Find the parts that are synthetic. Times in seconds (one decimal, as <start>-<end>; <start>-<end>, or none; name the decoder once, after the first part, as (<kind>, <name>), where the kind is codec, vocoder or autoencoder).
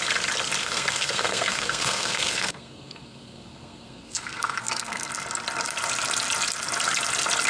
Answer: 0.6-5.1 (codec, SNAC)